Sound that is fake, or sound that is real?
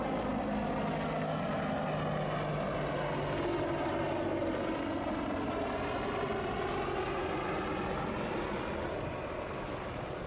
real